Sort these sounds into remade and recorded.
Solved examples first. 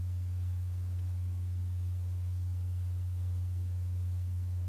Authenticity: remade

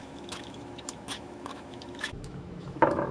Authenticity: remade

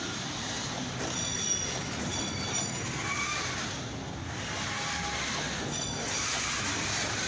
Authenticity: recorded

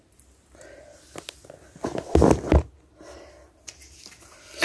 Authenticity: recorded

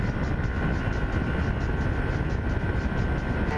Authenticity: recorded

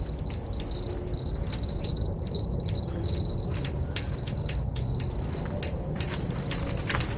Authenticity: recorded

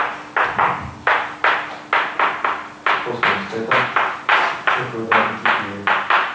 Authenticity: recorded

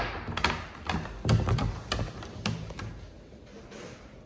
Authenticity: recorded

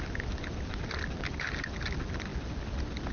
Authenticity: recorded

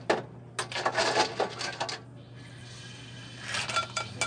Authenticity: recorded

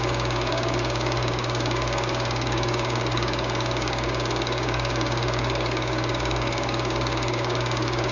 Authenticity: remade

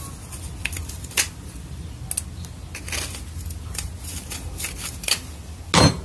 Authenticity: recorded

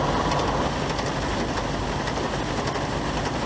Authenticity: recorded